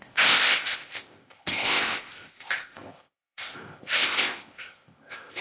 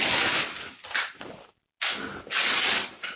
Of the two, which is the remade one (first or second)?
first